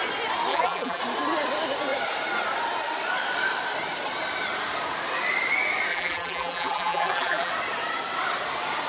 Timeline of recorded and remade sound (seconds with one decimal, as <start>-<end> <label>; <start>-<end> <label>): 0.0-0.5 recorded; 0.5-1.0 remade; 1.0-5.9 recorded; 5.9-7.5 remade; 7.5-8.9 recorded

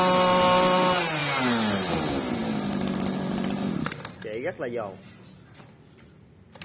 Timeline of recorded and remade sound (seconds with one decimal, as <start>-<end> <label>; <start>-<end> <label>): 0.0-6.6 recorded